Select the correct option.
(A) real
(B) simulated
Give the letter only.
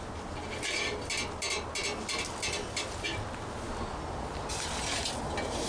A